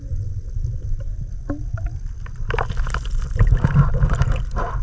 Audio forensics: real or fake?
real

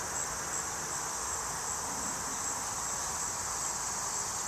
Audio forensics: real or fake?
real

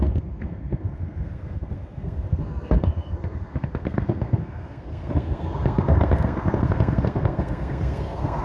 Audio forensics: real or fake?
fake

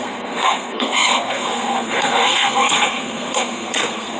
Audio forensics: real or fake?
fake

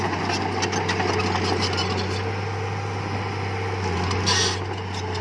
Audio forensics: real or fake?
real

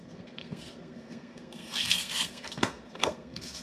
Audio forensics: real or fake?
fake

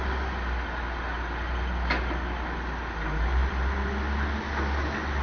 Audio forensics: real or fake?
real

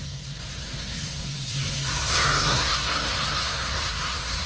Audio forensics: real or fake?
fake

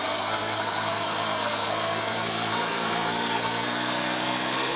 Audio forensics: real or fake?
fake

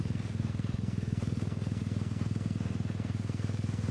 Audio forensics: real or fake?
fake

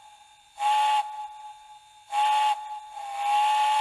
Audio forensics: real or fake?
real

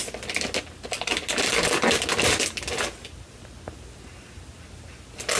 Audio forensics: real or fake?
real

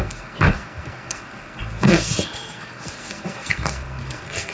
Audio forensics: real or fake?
fake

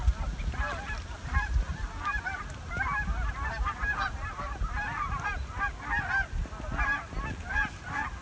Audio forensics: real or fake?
real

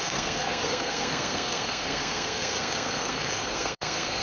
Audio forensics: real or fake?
fake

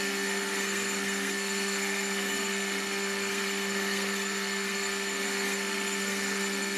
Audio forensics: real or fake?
fake